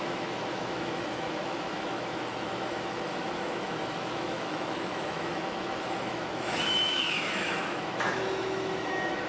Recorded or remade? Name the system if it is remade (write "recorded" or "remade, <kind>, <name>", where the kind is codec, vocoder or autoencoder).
remade, autoencoder, DAC-VAE